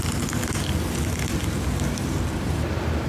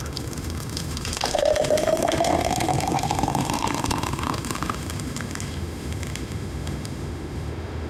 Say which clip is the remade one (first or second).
second